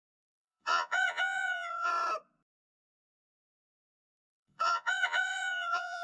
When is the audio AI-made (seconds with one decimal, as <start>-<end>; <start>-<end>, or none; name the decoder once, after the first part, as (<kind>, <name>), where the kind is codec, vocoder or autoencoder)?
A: 0.0-1.9 (vocoder, Vocos); 3.1-6.0

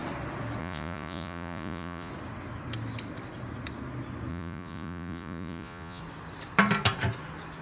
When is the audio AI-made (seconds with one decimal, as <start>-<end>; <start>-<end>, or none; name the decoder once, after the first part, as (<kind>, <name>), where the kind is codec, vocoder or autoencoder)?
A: 0.6-2.1 (vocoder, Vocos); 4.3-6.0

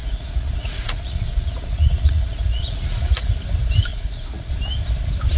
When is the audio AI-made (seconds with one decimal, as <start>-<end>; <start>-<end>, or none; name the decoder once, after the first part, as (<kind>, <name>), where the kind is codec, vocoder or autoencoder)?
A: 0.0-3.2 (vocoder, Vocos); 3.9-4.5

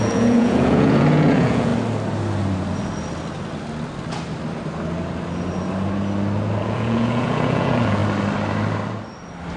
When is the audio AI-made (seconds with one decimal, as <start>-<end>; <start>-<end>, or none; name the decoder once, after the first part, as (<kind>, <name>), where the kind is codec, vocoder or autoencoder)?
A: 0.0-1.7 (vocoder, Vocos); 6.6-8.0

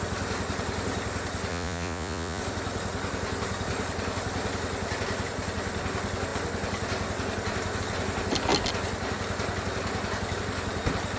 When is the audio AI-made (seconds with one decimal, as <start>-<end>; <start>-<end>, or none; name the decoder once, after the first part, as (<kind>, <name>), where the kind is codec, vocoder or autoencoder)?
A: 1.5-2.4 (vocoder, Vocos)

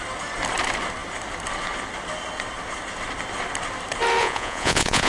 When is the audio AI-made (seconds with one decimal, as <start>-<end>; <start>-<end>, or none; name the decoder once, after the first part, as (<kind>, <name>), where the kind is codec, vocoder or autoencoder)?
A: 4.2-5.1 (vocoder, Vocos)

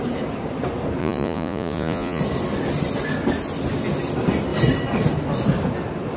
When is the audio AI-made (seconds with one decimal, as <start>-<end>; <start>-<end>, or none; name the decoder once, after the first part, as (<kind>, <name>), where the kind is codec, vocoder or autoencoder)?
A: 1.0-2.2 (vocoder, Vocos)

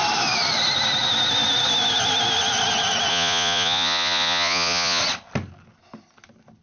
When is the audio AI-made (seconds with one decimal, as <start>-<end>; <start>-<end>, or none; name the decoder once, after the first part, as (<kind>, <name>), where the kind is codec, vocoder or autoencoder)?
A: 3.1-5.0 (vocoder, Vocos)